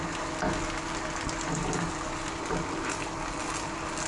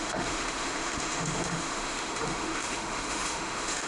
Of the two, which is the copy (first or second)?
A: second